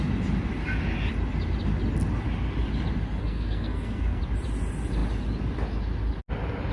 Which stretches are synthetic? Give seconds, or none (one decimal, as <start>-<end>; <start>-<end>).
3.2-4.2